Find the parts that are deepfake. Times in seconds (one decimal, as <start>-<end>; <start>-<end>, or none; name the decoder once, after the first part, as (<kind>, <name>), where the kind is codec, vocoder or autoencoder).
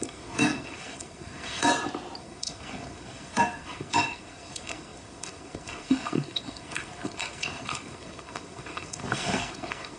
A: 0.0-1.7 (codec, SNAC); 2.2-10.0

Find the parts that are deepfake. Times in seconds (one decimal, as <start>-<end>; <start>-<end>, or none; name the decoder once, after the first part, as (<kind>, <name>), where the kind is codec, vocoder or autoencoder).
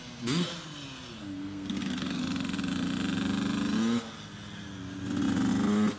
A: 1.2-2.2 (codec, SNAC)